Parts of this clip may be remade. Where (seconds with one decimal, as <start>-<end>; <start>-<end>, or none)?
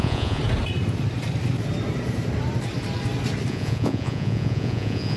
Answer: 0.0-0.4; 3.5-5.2